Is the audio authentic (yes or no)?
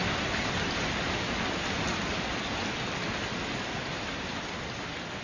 yes